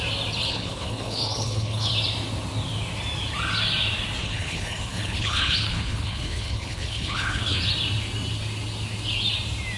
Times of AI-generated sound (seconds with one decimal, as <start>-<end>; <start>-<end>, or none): 0.4-1.9; 4.2-7.6